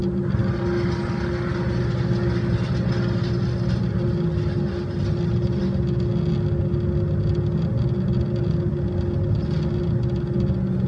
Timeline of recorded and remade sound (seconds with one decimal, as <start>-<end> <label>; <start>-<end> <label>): 0.0-10.9 recorded